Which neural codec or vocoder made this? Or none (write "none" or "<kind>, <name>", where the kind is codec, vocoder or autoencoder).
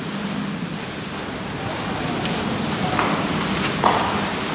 none